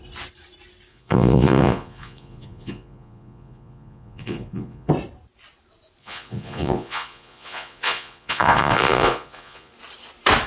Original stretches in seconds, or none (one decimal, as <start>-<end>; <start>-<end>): 0.0-0.9; 4.9-6.0; 9.7-10.5